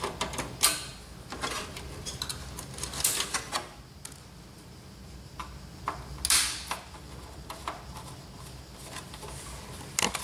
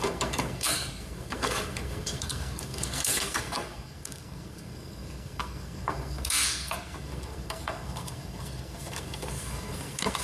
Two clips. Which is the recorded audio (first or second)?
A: first